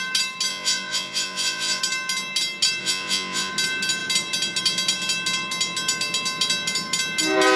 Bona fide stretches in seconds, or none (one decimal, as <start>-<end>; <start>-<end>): 0.0-0.5; 1.8-2.8; 3.5-7.6